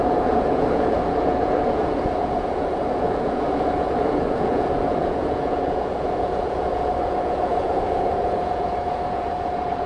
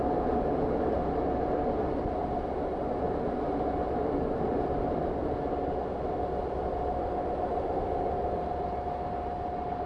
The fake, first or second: first